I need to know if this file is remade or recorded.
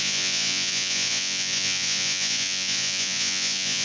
remade